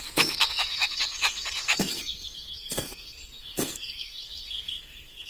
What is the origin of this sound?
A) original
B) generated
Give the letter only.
B